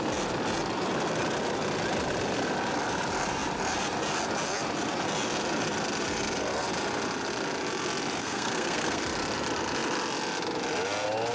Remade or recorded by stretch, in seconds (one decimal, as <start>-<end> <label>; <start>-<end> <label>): 0.0-8.2 recorded; 8.2-9.0 remade; 9.0-11.3 recorded